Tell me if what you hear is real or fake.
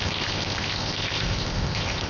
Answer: fake